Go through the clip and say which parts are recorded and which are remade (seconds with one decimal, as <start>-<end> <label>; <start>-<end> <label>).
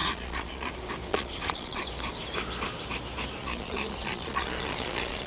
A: 0.0-0.7 remade; 0.7-1.1 recorded; 1.1-1.8 remade; 1.8-3.4 recorded; 3.4-5.3 remade